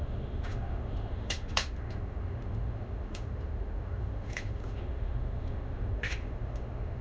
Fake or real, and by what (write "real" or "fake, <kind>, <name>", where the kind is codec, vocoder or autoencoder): fake, autoencoder, DAC-VAE